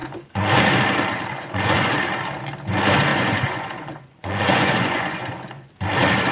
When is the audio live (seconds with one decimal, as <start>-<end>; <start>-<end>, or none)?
0.6-1.3; 1.9-3.1; 5.7-6.3